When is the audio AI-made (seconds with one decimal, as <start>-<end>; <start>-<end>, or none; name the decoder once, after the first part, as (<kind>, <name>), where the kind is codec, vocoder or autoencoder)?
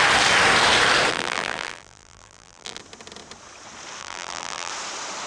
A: 1.1-2.8 (vocoder, BigVGAN v2); 4.0-4.7